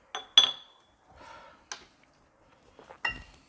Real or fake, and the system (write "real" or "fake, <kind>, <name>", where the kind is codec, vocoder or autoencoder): real